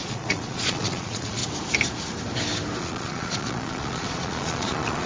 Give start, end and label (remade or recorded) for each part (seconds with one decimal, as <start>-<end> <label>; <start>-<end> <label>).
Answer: 0.0-1.4 remade; 1.4-2.8 recorded; 2.8-5.1 remade